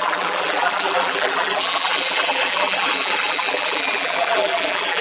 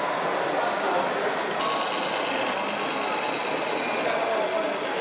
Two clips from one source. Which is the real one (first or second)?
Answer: second